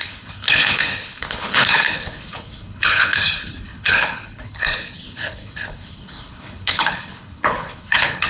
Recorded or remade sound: remade